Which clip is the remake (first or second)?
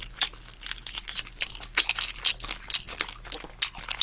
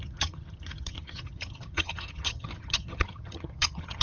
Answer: second